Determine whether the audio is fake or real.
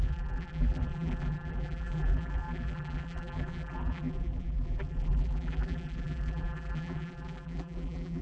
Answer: fake